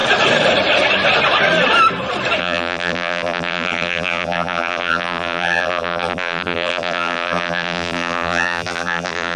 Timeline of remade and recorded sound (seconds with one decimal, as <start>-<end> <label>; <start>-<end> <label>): 0.0-2.4 recorded; 2.4-9.4 remade